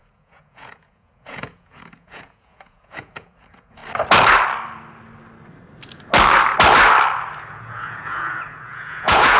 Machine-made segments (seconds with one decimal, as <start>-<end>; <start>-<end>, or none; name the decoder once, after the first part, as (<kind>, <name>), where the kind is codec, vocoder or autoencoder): 0.0-3.8 (vocoder, Vocos); 7.5-9.4